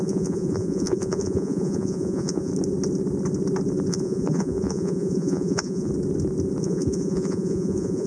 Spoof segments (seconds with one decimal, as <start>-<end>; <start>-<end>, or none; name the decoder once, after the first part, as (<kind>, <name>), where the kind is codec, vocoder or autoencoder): 0.0-2.5 (vocoder, Vocos); 3.9-5.9; 6.6-8.1